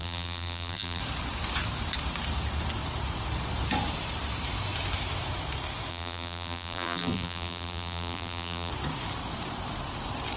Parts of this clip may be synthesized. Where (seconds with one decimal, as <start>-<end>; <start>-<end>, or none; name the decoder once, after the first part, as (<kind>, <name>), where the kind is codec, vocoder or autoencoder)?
0.0-1.0 (vocoder, BigVGAN v2); 5.9-8.7